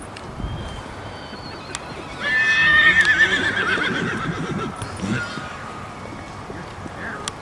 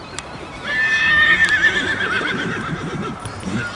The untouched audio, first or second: first